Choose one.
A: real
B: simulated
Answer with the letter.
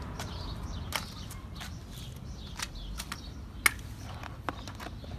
A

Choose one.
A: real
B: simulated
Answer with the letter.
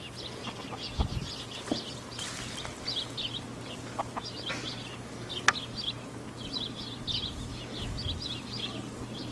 A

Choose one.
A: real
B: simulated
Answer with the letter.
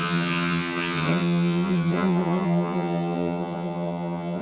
B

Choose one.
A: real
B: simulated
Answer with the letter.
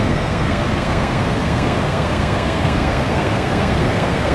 B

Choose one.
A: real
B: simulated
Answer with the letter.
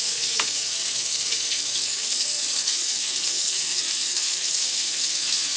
B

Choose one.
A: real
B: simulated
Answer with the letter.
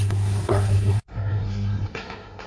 B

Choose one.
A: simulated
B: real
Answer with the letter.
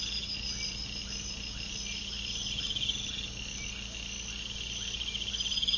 B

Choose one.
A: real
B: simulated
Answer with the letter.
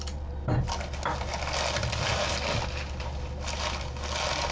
A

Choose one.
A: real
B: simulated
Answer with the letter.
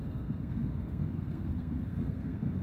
B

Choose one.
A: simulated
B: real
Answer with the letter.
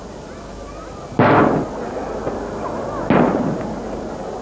B